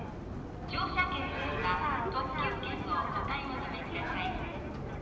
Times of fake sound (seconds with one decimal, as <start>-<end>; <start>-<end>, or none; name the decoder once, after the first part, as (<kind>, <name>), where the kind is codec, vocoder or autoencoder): none